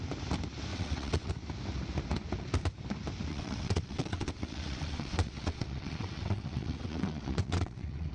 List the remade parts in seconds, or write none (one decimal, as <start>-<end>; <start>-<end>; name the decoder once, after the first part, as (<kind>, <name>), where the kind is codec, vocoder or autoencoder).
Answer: 0.7-1.3 (vocoder, WaveNeXt); 3.3-8.1